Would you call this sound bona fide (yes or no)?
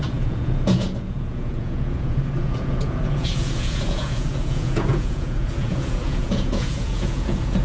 no